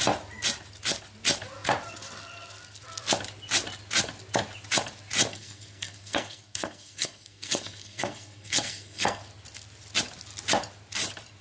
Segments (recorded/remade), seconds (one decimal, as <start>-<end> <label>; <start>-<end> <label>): 0.0-5.3 recorded; 5.3-9.2 remade; 9.2-11.4 recorded